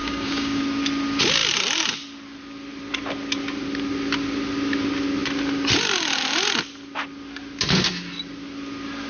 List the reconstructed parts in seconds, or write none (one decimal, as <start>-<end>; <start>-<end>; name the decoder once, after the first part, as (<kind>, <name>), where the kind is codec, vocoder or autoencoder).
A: 0.0-0.6 (codec, DAC)